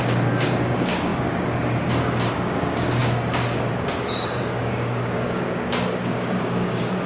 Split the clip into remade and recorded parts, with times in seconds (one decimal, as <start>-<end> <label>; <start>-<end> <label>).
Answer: 0.0-7.1 remade